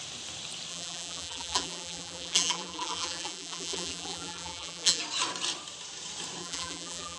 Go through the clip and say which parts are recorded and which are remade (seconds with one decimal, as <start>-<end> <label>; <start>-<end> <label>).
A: 0.0-0.7 recorded; 0.7-5.0 remade; 5.0-6.4 recorded; 6.4-7.2 remade